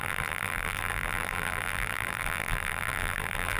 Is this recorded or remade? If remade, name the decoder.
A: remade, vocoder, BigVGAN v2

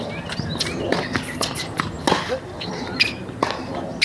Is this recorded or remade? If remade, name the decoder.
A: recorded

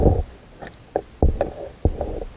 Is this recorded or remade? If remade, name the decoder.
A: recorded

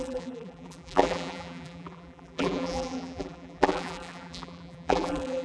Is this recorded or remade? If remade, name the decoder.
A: remade, vocoder, BigVGAN v2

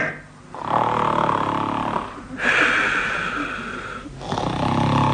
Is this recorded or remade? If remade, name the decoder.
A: recorded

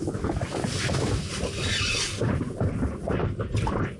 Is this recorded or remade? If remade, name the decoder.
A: remade, vocoder, BigVGAN v2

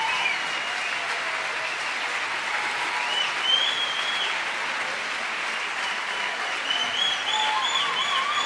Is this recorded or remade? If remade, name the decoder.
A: recorded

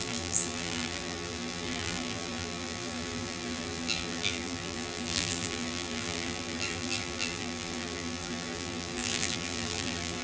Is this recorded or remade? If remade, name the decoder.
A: remade, vocoder, BigVGAN v2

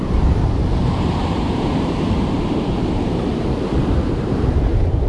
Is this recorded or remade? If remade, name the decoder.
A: remade, vocoder, BigVGAN v2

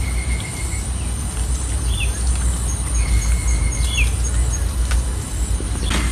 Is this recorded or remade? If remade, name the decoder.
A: recorded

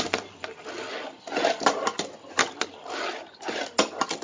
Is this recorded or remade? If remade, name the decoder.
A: recorded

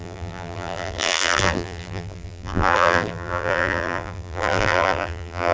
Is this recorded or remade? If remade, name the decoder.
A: remade, vocoder, BigVGAN v2